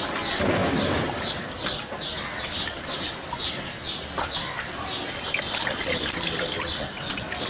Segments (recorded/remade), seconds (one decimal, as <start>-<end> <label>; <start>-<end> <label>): 0.0-7.5 recorded